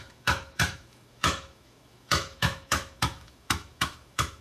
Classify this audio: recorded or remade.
remade